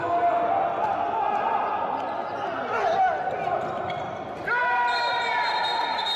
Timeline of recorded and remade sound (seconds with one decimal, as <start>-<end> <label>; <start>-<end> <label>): 0.0-6.2 recorded